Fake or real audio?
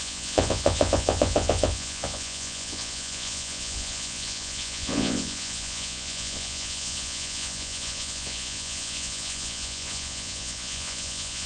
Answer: fake